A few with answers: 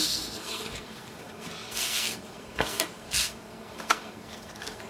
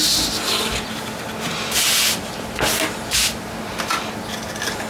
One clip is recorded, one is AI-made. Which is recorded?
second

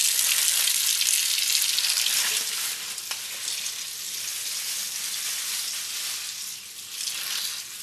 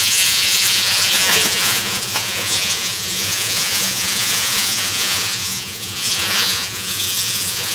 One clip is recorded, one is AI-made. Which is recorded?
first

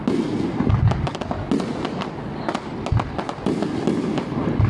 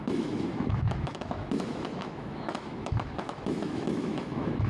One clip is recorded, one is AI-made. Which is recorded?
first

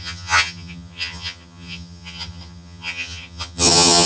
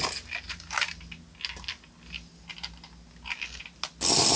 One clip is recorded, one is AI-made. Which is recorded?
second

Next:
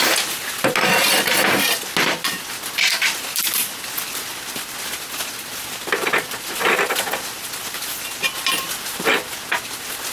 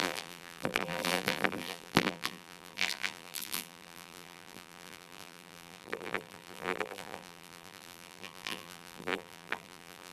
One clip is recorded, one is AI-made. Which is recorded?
first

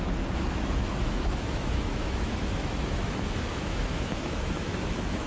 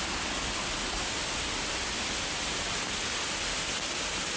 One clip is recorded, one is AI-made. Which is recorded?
second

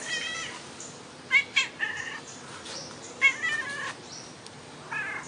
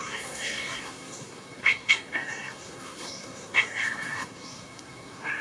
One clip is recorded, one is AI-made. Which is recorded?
first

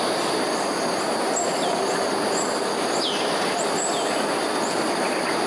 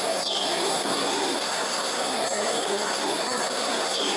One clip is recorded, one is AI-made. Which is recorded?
first